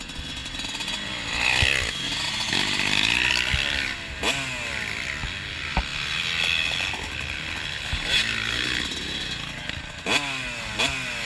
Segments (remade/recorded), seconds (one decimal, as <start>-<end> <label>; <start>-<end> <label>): 0.0-11.3 recorded